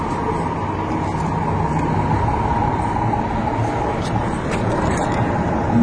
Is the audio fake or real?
real